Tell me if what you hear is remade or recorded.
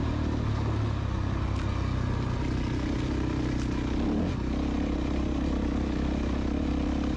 recorded